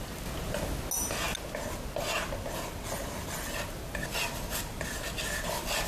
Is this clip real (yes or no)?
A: yes